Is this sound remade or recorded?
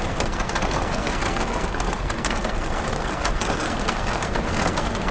remade